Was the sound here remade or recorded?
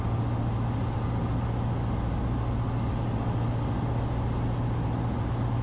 recorded